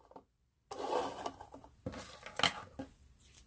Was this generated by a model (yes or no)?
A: no